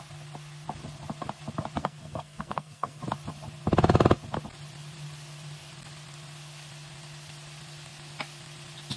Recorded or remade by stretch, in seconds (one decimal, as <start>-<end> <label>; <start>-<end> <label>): 0.0-1.8 recorded; 1.8-3.0 remade; 3.0-9.0 recorded